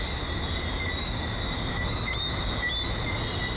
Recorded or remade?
recorded